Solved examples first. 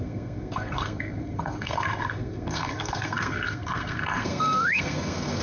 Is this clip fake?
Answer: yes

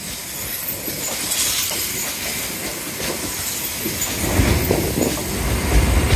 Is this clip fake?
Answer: no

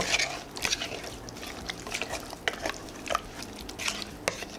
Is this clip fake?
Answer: no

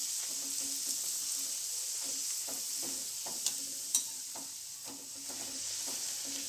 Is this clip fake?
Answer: no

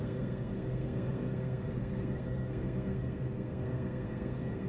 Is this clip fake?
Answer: yes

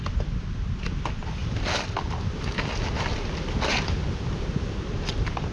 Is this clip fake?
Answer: no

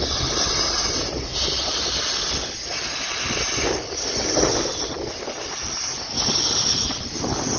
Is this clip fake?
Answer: no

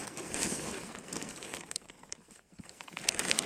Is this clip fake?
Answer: yes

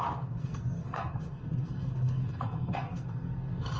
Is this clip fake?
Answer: yes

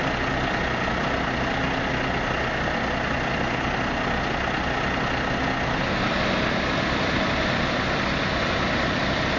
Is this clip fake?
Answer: no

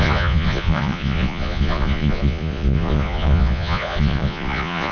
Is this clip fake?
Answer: yes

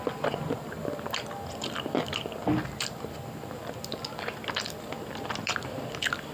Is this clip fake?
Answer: no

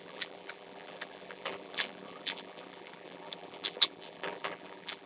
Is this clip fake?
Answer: yes